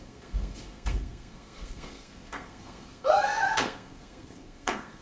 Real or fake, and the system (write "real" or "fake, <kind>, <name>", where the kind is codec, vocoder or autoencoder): fake, codec, SNAC